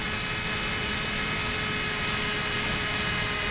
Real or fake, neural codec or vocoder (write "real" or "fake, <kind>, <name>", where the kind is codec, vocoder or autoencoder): real